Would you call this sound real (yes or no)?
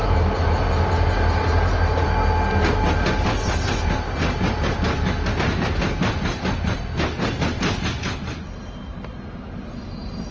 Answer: yes